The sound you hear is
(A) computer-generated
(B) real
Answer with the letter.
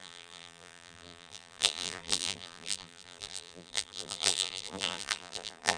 A